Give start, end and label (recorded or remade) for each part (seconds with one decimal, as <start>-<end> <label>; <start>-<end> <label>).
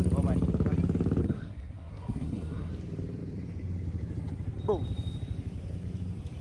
0.0-1.2 recorded; 1.2-2.7 remade; 2.7-6.4 recorded